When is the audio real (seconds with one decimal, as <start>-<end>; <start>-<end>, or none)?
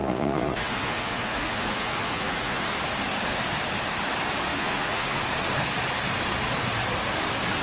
2.6-4.5; 5.2-7.6